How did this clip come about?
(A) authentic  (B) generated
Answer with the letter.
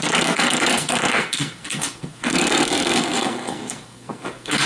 B